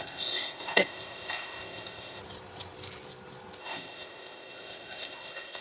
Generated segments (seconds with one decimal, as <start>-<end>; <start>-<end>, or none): 0.0-2.2; 3.6-5.6